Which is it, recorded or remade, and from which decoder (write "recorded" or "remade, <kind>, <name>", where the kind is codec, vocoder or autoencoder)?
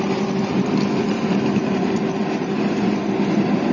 recorded